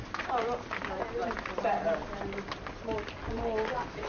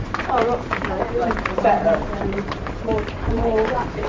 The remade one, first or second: second